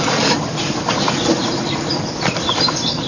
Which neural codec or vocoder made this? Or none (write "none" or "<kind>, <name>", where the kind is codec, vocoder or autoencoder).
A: vocoder, BigVGAN v2